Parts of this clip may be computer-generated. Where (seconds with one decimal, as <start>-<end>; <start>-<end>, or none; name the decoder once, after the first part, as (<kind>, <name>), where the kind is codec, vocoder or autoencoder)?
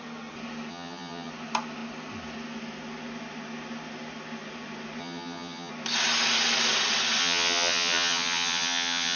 0.7-1.3 (vocoder, HiFi-GAN); 5.0-5.7; 7.2-9.2